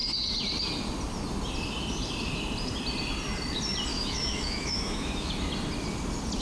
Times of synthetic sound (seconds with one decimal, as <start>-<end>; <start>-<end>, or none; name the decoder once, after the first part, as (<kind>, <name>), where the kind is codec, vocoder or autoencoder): 3.9-5.3 (autoencoder, DAC-VAE)